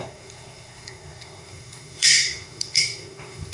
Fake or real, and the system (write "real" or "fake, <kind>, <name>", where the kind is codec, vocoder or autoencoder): fake, codec, SNAC